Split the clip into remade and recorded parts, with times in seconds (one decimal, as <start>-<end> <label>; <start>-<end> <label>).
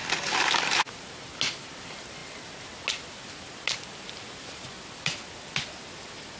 0.0-6.4 recorded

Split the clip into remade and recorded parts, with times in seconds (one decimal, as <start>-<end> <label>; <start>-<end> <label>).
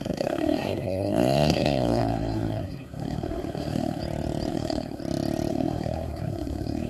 0.0-4.0 remade; 4.0-4.5 recorded; 4.5-5.0 remade; 5.0-5.5 recorded; 5.5-6.9 remade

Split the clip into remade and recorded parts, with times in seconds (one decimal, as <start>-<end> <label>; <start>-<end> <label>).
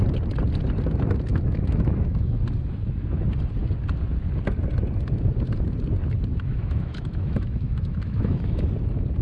0.0-1.3 recorded; 1.3-2.4 remade; 2.4-6.3 recorded; 6.3-8.7 remade; 8.7-9.2 recorded